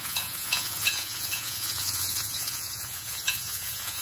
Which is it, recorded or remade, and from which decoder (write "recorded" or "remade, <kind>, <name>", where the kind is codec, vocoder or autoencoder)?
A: remade, vocoder, Vocos